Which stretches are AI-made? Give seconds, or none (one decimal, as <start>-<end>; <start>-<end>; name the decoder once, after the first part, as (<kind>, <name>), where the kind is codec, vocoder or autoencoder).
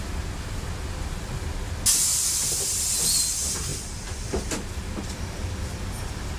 2.1-3.0 (vocoder, BigVGAN v2); 3.7-4.7